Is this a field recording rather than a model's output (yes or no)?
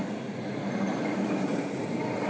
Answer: yes